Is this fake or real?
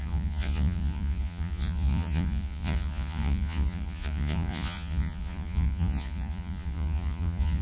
fake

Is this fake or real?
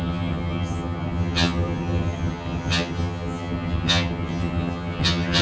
fake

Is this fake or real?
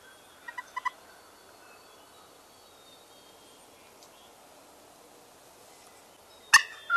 real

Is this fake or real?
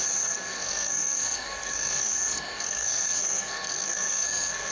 fake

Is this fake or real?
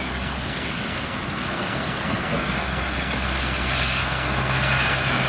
fake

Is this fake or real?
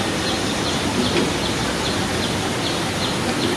real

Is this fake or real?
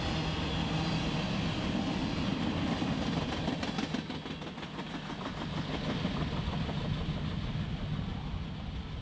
real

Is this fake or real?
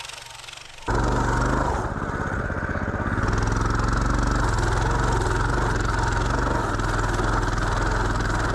real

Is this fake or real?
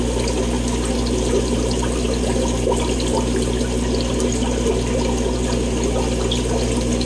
real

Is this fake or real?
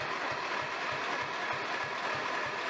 real